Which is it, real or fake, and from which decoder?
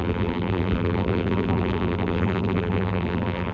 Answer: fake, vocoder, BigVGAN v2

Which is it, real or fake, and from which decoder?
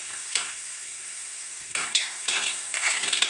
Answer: fake, codec, SNAC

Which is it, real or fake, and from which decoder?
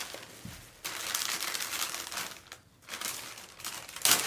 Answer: real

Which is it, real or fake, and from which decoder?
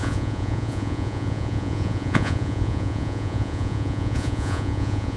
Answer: fake, vocoder, Vocos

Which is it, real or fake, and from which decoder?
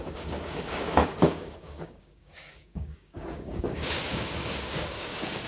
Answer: fake, codec, DAC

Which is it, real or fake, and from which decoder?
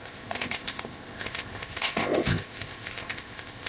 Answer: fake, codec, ZipCodec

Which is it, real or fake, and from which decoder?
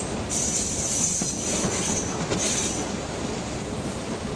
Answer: real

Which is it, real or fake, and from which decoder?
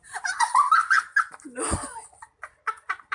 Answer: fake, vocoder, BigVGAN v2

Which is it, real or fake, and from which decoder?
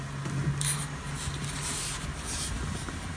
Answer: real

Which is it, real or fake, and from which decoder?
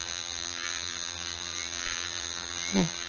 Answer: fake, vocoder, BigVGAN v2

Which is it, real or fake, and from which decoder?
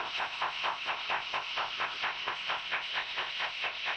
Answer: fake, codec, ZipCodec